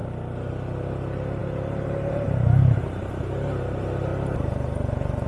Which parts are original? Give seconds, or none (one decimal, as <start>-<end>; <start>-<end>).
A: 0.0-1.4; 3.1-5.3